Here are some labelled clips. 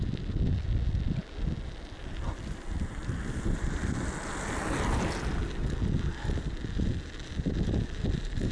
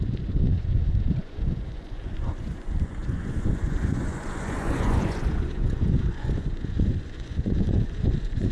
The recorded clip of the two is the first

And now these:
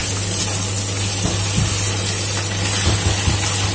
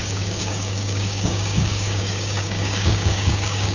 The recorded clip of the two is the first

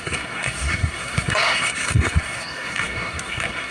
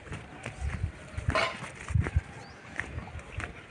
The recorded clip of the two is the second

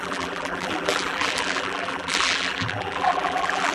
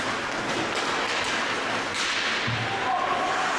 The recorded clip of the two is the second